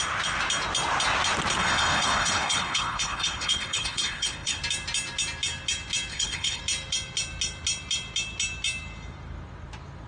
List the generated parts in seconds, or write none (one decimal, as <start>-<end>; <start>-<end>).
1.6-4.6; 6.1-6.6